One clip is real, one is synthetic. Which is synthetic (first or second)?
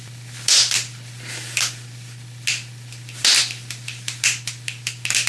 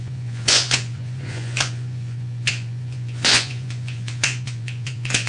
second